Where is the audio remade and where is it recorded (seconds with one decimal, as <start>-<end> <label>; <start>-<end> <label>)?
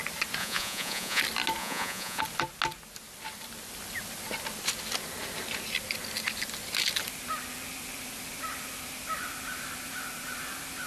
0.0-0.4 recorded; 0.4-1.2 remade; 1.2-1.6 recorded; 1.6-2.2 remade; 2.2-10.9 recorded